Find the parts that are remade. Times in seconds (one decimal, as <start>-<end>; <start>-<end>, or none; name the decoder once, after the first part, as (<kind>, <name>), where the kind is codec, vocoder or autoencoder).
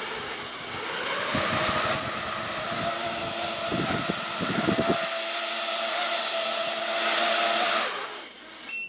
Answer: 1.3-3.5 (vocoder, BigVGAN v2)